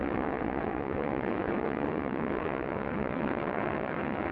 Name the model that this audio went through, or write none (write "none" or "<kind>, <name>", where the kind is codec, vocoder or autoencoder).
vocoder, WaveNeXt